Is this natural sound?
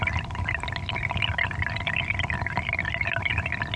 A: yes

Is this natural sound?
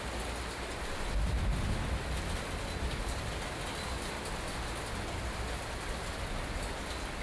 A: yes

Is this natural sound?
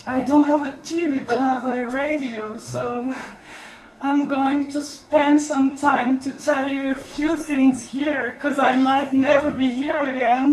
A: no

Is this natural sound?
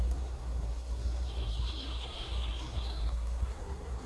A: no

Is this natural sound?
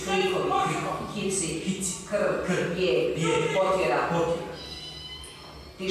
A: yes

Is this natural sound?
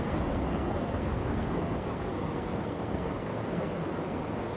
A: no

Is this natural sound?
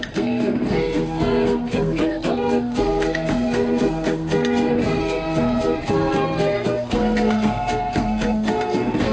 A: no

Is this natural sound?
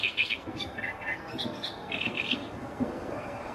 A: no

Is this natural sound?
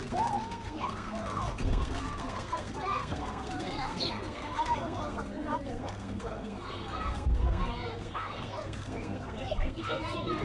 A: no